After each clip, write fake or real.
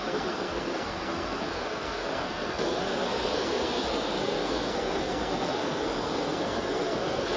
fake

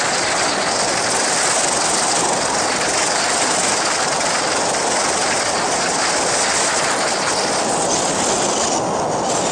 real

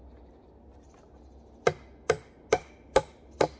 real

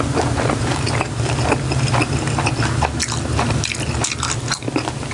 real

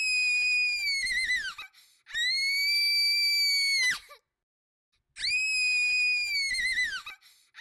real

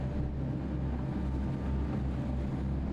real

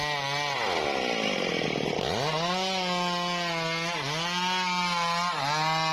real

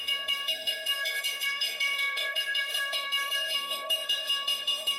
fake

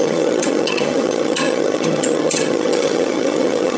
fake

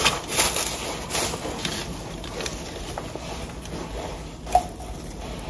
real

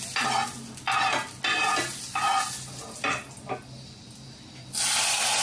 real